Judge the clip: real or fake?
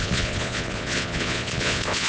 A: fake